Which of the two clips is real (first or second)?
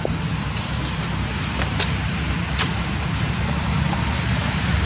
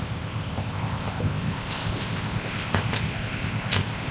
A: first